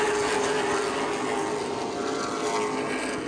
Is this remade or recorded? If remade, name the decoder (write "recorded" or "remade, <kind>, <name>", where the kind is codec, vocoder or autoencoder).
recorded